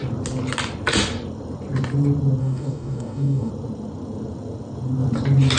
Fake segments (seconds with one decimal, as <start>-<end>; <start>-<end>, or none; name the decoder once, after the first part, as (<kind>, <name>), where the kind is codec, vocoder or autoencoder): 2.4-3.5 (codec, DAC)